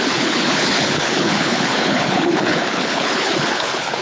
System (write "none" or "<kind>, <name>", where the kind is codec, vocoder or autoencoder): codec, HILCodec